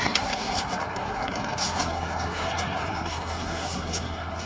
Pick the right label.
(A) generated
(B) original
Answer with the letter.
A